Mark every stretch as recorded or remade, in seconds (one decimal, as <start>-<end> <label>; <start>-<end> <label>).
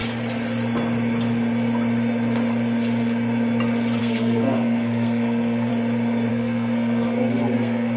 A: 0.0-4.0 recorded; 4.0-5.7 remade; 5.7-6.3 recorded; 6.3-8.0 remade